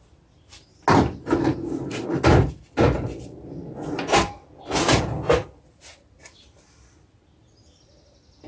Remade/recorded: recorded